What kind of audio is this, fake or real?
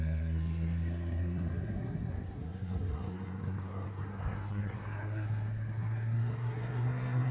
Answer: fake